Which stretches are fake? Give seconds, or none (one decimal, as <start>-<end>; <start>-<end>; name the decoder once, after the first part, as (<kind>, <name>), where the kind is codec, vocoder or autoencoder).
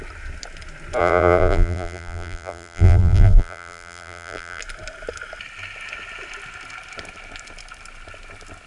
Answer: 1.0-4.6 (vocoder, BigVGAN v2)